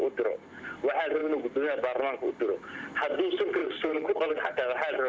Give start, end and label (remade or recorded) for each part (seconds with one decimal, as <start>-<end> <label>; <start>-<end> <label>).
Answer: 0.0-3.6 recorded; 3.6-4.5 remade; 4.5-5.1 recorded